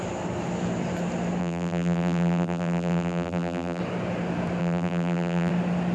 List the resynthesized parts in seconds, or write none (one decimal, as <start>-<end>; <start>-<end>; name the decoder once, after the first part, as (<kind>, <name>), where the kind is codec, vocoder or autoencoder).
1.4-3.8 (vocoder, BigVGAN v2); 4.6-5.5